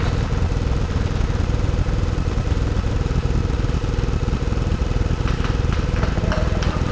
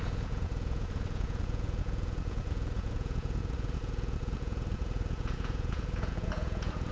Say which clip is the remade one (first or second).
second